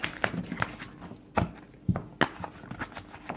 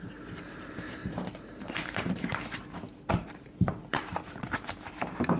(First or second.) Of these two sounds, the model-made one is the second